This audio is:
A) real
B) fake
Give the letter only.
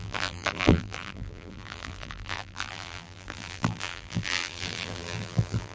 B